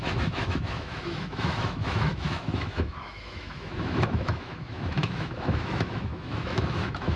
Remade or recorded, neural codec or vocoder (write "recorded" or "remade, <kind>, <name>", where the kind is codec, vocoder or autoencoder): remade, autoencoder, DAC-VAE